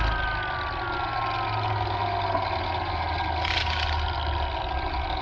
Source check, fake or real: real